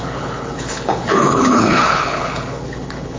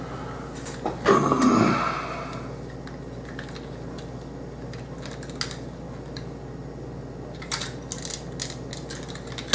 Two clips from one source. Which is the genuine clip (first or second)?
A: second